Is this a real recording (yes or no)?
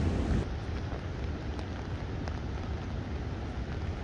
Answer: yes